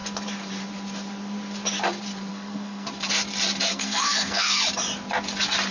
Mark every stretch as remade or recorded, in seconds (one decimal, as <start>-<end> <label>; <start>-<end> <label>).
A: 0.0-2.3 recorded; 2.3-2.9 remade; 2.9-3.7 recorded; 3.7-4.6 remade; 4.6-5.7 recorded